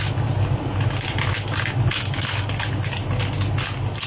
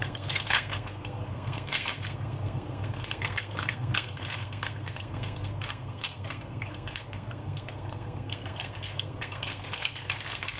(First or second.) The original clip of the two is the first